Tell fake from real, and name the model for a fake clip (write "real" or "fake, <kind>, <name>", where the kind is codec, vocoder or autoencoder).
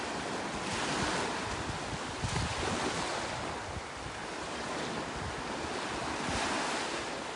real